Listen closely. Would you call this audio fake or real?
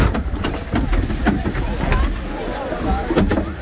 real